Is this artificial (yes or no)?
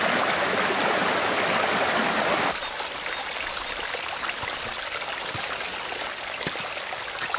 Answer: no